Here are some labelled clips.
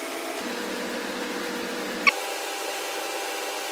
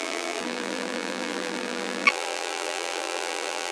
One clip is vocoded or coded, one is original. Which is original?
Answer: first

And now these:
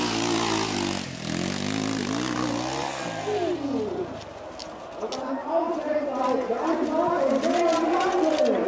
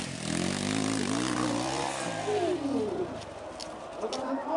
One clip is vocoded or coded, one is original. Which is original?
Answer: first